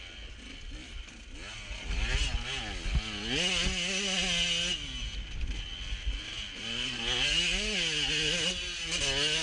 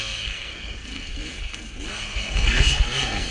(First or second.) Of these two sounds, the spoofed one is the second